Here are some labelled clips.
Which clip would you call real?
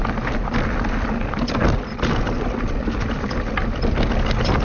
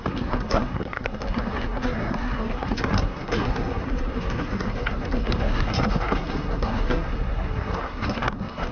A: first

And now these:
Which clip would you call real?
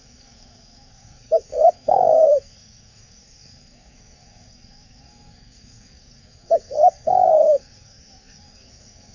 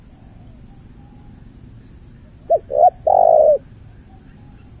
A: second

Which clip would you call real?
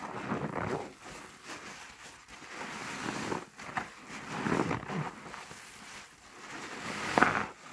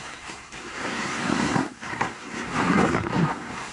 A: first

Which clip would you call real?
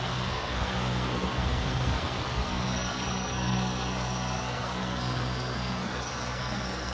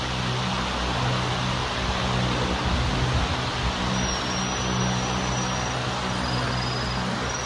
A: second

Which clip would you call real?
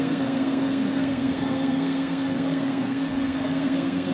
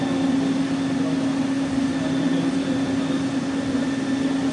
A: second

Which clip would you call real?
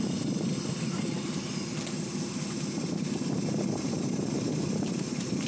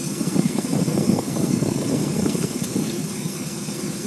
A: first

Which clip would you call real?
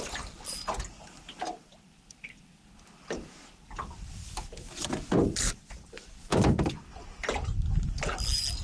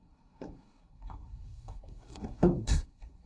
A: first